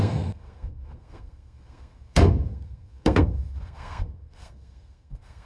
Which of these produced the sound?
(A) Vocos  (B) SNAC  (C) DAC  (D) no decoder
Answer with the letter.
B